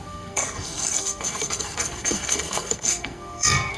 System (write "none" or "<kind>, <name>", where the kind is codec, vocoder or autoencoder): codec, SNAC